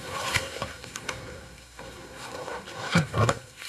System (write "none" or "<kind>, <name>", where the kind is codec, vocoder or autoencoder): codec, SNAC